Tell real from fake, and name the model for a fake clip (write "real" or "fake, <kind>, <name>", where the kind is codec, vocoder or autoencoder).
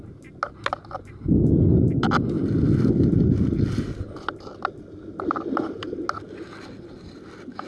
real